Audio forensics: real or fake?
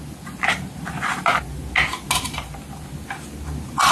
real